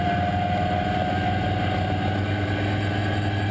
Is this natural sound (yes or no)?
yes